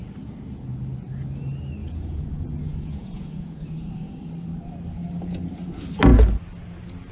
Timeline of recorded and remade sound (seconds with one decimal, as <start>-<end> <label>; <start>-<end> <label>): 0.0-1.8 recorded; 1.8-3.6 remade; 3.6-7.1 recorded